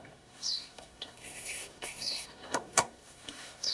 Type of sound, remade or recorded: remade